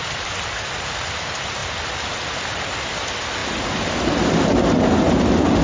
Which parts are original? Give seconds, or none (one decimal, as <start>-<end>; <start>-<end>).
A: 0.0-5.6